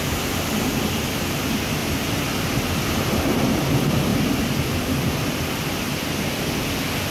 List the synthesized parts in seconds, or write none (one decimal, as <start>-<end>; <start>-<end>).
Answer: 1.8-2.5

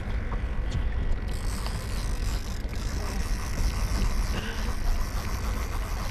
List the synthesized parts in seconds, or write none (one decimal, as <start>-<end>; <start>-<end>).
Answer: 2.7-3.2

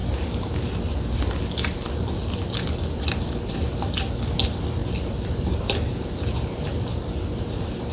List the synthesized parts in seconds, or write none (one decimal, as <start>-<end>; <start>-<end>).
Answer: none

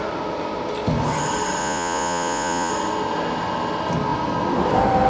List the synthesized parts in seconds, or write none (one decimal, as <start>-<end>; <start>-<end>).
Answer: 1.6-2.7